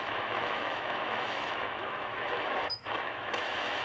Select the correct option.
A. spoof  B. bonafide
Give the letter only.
A